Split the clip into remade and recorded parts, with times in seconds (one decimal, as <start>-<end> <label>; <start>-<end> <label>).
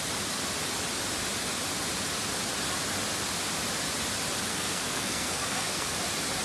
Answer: 0.0-4.5 recorded; 4.5-5.9 remade; 5.9-6.4 recorded